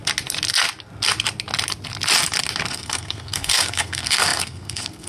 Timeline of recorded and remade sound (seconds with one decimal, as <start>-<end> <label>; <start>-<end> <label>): 0.0-2.7 recorded; 2.7-5.1 remade